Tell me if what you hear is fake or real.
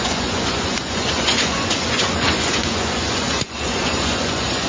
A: fake